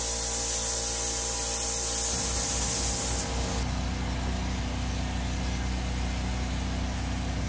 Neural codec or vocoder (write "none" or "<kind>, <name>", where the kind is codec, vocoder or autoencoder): none